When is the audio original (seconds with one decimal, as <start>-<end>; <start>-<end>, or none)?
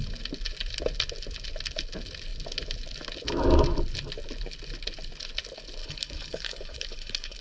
0.0-5.8